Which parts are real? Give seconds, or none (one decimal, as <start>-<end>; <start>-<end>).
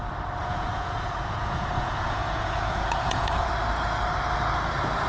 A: 0.0-0.4; 3.5-5.1